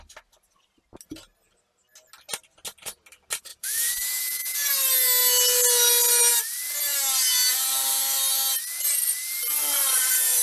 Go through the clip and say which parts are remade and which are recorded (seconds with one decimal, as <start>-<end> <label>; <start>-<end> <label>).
0.0-3.5 recorded; 3.5-4.7 remade; 4.7-10.4 recorded